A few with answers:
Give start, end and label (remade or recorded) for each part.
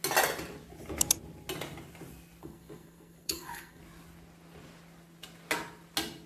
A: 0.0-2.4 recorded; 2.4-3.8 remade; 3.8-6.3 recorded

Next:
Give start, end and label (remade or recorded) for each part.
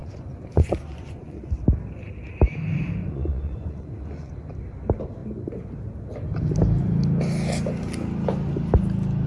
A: 0.0-1.5 remade; 1.5-3.0 recorded; 3.0-4.3 remade; 4.3-9.3 recorded